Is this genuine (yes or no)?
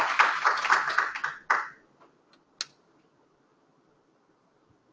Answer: yes